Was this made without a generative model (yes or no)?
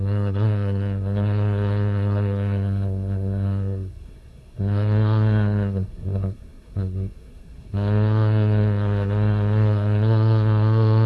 no